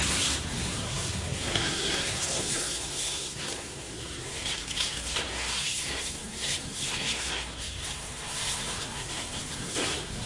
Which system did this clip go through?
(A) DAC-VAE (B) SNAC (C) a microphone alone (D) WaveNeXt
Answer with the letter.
B